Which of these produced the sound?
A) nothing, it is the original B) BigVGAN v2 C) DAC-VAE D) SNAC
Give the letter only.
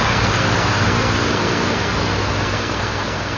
D